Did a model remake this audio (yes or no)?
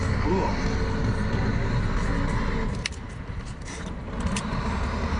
no